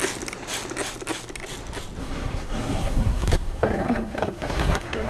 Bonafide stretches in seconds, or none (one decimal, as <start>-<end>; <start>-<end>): 0.0-2.0